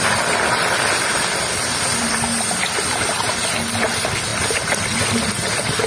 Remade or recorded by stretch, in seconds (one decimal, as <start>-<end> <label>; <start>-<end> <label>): 0.0-5.9 recorded